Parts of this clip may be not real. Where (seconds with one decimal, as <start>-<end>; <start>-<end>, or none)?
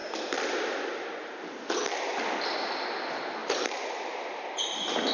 3.4-5.1